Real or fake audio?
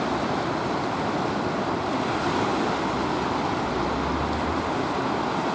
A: real